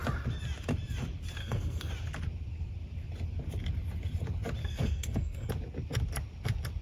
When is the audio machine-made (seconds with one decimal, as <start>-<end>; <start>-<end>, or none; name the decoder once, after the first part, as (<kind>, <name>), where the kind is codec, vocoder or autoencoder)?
1.4-1.9 (codec, SNAC); 4.6-5.5